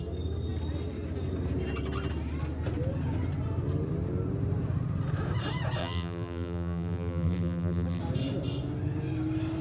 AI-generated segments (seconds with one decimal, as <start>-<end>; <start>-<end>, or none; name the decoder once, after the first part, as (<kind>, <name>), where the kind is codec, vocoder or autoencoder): 5.8-8.0 (vocoder, BigVGAN v2)